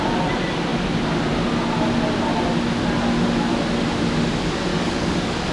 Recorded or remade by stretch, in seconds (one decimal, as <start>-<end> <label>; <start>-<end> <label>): 0.0-4.7 recorded; 4.7-5.5 remade